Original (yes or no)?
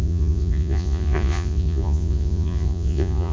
no